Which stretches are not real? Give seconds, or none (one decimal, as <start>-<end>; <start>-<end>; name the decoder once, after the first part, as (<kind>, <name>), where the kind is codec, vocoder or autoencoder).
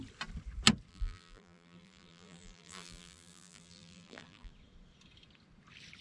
0.9-4.5 (vocoder, BigVGAN v2)